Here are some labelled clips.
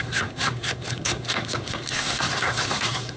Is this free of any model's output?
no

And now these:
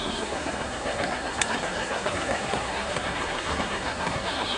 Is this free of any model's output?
no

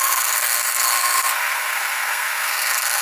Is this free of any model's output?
no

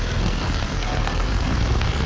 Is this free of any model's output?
no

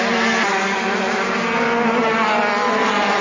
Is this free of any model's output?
yes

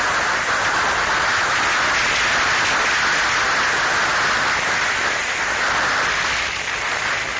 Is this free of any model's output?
yes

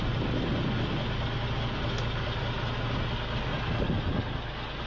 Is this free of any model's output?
yes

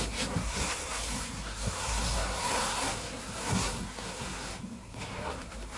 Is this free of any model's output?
no